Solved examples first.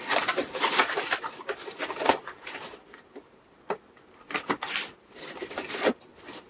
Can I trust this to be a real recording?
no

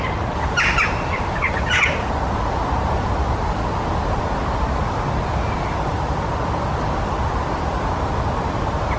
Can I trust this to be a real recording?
yes